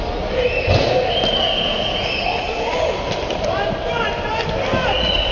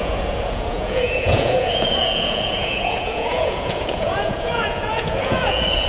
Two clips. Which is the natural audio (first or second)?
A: first